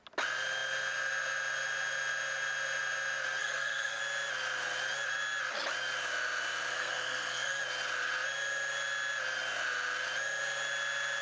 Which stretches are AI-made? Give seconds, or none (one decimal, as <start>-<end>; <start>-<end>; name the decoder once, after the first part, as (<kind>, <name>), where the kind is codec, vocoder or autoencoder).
3.4-4.0 (codec, SNAC); 6.7-7.6